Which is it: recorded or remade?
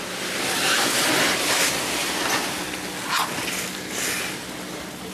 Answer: recorded